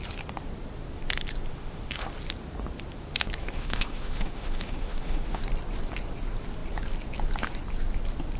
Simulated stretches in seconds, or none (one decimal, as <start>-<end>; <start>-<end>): 1.5-2.0; 3.4-5.4